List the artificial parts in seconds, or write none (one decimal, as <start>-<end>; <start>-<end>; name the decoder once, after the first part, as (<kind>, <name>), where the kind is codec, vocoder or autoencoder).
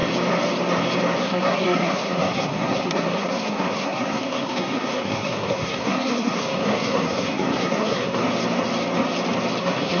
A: 1.2-8.2 (codec, SNAC); 9.6-10.0